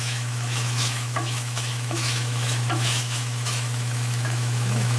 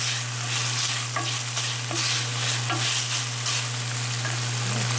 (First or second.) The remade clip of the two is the first